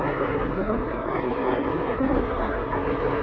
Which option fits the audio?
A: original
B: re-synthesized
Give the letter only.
B